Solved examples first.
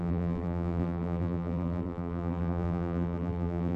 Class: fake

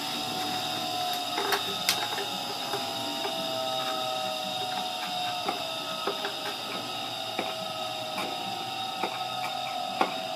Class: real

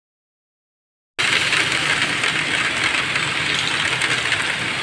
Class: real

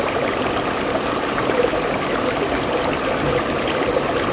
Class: real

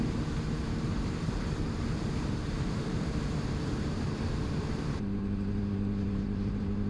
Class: fake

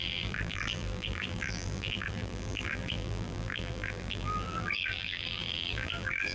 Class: fake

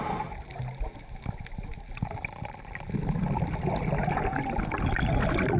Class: real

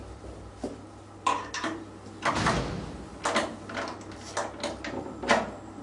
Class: real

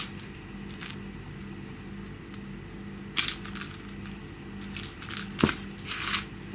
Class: real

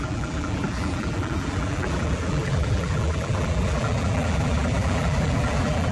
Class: fake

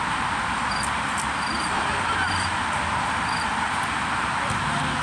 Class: fake